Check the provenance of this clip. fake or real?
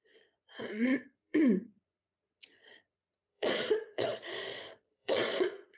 fake